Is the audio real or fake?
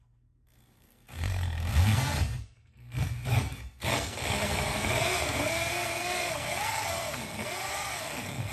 fake